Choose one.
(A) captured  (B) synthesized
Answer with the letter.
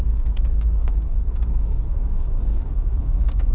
B